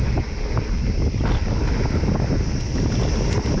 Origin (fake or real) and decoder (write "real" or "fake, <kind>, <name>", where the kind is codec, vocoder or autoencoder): real